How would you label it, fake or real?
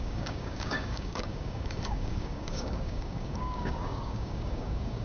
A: fake